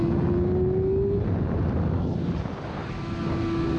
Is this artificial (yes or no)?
no